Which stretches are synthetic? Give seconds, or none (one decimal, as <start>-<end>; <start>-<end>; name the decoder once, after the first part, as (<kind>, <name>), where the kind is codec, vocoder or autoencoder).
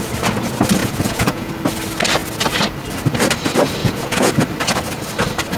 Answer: 0.8-1.5 (vocoder, Vocos); 3.8-4.3